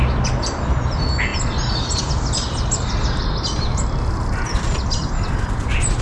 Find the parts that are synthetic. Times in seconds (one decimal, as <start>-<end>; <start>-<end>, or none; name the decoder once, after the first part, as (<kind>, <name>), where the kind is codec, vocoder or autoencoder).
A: none